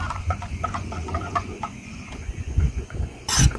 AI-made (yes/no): yes